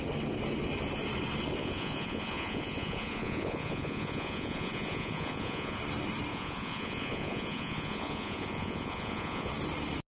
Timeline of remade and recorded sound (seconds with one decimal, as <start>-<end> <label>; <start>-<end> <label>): 0.0-1.6 recorded; 1.6-5.8 remade; 5.8-6.3 recorded; 6.3-9.5 remade; 9.5-10.2 recorded